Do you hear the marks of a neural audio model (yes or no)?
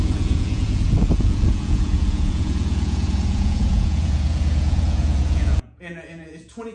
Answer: yes